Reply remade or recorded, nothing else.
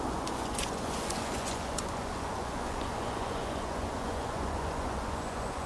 remade